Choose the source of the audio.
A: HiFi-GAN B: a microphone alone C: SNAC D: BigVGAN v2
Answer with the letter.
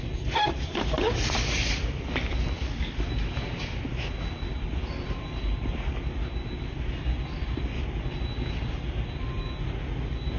B